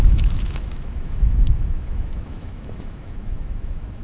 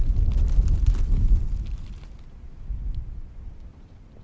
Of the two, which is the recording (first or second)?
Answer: second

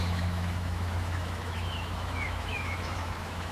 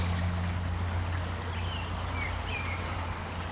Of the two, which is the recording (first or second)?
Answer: second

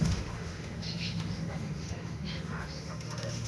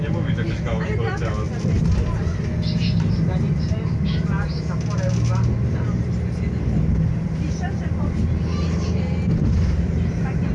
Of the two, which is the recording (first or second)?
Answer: second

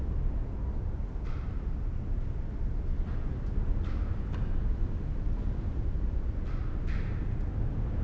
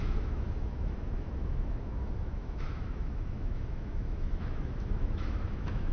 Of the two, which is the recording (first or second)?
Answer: first